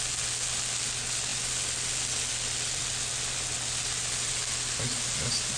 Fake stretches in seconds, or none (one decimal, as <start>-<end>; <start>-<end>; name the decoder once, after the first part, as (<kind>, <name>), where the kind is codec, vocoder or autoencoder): none